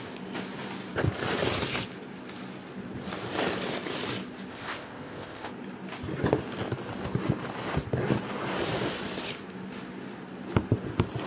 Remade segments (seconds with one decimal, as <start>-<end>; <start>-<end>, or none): 4.5-5.5